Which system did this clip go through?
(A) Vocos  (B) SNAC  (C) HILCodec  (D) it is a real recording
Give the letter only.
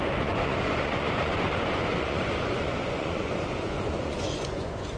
A